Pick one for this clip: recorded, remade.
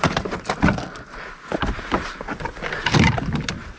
recorded